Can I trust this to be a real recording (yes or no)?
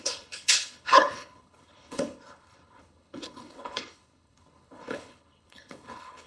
no